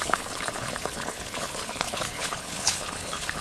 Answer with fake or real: fake